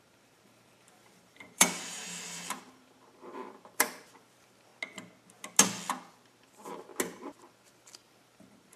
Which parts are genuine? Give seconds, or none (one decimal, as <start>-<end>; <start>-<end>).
4.7-6.1; 6.9-7.5